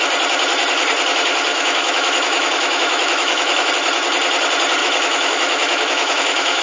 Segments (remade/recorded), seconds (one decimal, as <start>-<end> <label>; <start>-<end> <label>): 0.0-1.5 recorded; 1.5-3.7 remade; 3.7-4.8 recorded; 4.8-6.6 remade